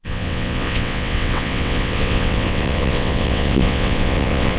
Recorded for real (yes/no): no